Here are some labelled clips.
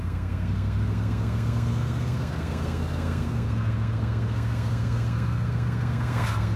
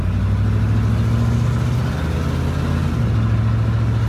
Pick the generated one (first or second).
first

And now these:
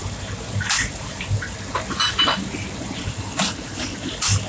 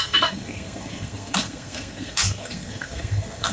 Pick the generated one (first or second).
second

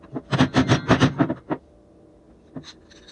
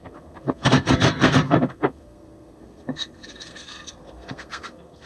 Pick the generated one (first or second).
second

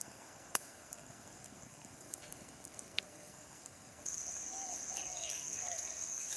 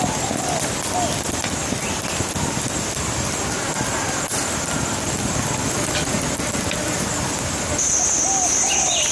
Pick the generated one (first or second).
first